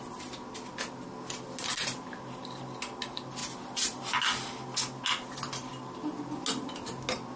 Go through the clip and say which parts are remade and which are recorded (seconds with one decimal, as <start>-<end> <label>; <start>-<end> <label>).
0.0-7.4 recorded